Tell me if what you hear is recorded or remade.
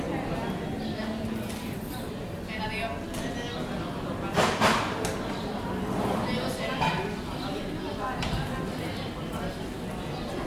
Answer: recorded